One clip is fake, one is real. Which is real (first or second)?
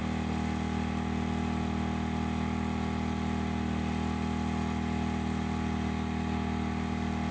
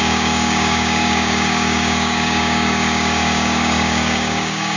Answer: first